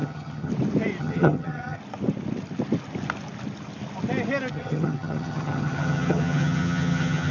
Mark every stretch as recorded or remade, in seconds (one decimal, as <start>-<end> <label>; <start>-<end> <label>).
0.0-0.5 remade; 0.5-1.0 recorded; 1.0-1.8 remade; 1.8-4.5 recorded; 4.5-7.3 remade